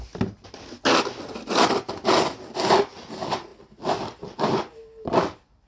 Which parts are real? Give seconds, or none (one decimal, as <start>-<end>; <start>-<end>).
0.0-5.7